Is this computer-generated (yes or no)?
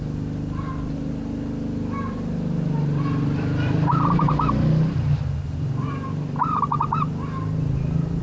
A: yes